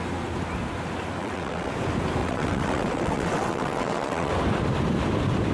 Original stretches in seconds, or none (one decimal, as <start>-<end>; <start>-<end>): 0.0-1.2; 1.7-2.2; 4.3-5.5